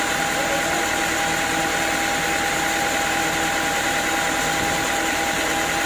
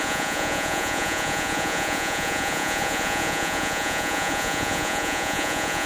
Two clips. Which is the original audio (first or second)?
first